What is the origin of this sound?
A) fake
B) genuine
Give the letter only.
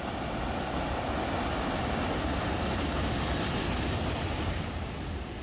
B